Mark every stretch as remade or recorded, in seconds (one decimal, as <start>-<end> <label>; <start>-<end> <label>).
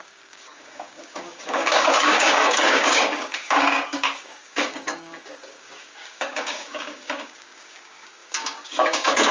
0.0-9.3 remade